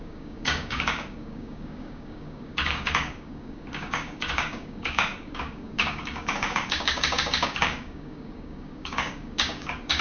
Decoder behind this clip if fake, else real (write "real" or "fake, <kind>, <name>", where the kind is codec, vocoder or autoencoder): fake, codec, DAC